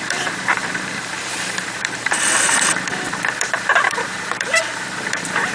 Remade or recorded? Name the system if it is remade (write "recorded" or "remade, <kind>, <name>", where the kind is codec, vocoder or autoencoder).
remade, vocoder, BigVGAN v2